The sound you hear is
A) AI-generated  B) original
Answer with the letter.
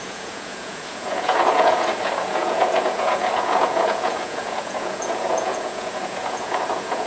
A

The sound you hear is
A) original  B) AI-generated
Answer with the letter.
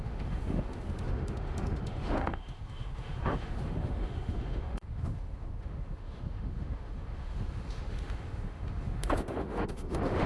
B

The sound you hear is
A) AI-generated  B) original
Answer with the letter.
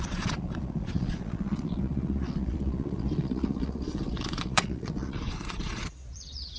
A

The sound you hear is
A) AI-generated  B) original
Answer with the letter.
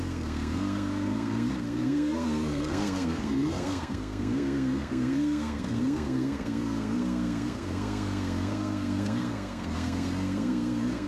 A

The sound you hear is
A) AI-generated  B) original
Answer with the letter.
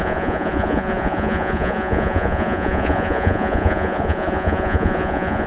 A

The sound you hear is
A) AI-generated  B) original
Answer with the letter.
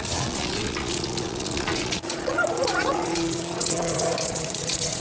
A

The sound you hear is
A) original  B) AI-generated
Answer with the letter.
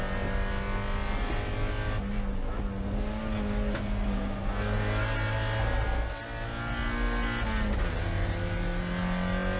A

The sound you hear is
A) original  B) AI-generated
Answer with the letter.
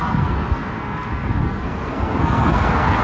B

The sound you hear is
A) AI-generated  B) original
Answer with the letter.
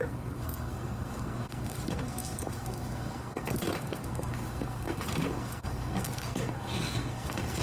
A